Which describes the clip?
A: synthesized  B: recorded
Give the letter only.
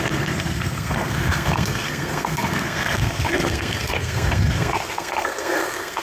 A